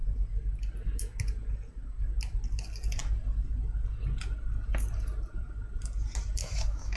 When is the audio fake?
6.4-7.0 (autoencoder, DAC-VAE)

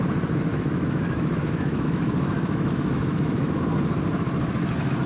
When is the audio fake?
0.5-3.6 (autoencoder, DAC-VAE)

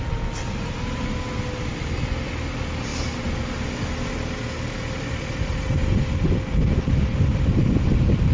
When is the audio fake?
none

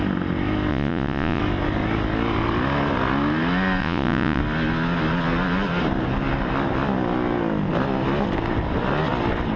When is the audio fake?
0.7-1.4 (vocoder, Vocos); 3.8-4.4

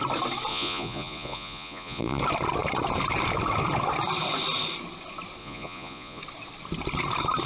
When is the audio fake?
0.5-2.2 (vocoder, Vocos); 5.4-6.2

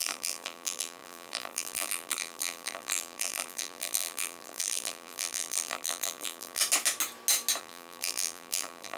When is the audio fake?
0.0-6.6 (vocoder, BigVGAN v2); 7.6-9.0

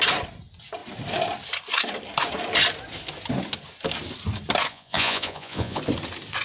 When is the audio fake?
4.7-5.8 (vocoder, Vocos)